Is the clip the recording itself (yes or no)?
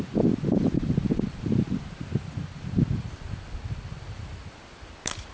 yes